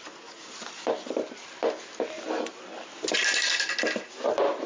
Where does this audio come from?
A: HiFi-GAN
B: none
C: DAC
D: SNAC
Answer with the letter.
B